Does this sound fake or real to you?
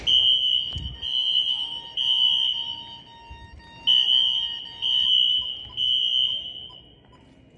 real